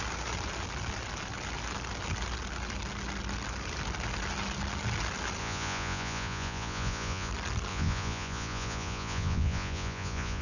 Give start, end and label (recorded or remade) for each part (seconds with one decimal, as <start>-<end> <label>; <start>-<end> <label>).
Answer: 0.0-5.4 recorded; 5.4-7.3 remade; 7.3-7.7 recorded; 7.7-10.4 remade